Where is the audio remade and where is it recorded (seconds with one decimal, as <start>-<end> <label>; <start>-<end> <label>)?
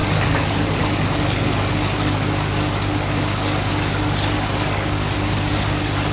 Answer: 0.0-6.1 remade